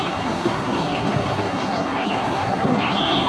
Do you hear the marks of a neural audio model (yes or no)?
yes